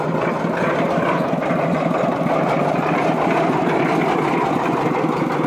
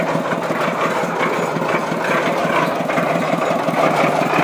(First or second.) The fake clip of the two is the first